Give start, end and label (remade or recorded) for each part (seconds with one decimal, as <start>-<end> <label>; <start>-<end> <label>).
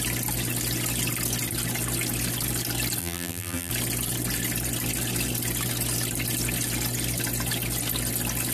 0.0-3.0 recorded; 3.0-3.7 remade; 3.7-8.5 recorded